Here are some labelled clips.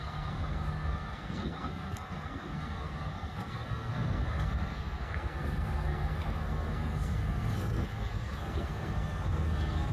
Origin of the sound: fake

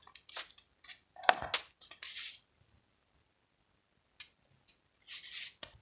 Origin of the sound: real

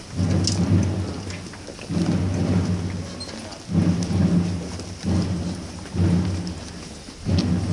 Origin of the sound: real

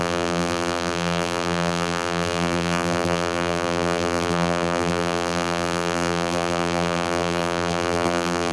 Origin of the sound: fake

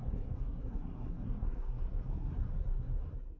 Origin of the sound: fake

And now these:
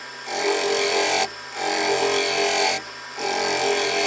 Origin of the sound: real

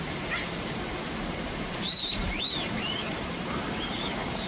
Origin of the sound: fake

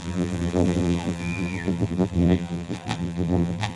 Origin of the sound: fake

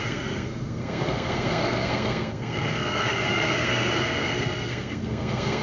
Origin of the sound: fake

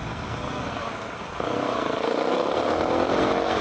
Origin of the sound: fake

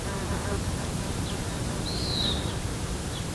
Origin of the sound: fake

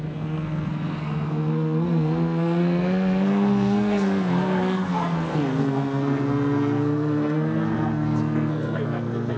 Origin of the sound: fake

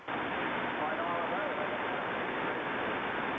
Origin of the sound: real